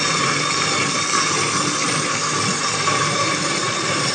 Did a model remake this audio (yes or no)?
yes